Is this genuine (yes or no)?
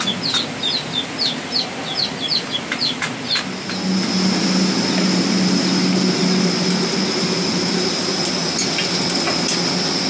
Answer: yes